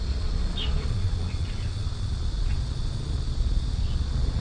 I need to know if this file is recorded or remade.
remade